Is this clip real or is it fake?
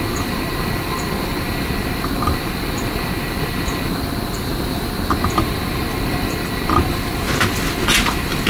real